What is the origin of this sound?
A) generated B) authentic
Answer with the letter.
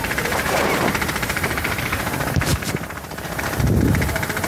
A